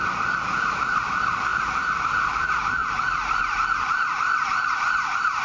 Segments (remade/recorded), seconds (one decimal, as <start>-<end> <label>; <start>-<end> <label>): 0.0-5.4 remade